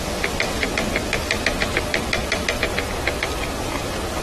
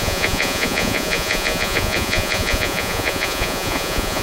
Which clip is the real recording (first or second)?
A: first